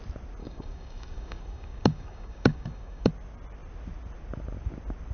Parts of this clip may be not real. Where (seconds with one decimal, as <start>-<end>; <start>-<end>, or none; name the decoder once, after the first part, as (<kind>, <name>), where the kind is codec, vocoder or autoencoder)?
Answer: 0.4-3.1 (codec, DAC)